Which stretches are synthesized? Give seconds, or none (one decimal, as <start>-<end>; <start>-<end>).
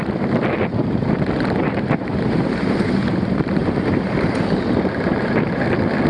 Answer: 0.8-4.5